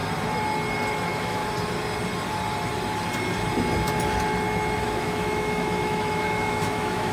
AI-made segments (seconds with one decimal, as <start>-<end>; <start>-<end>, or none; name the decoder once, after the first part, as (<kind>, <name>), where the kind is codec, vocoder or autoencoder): 0.9-1.4 (autoencoder, DAC-VAE); 4.8-7.1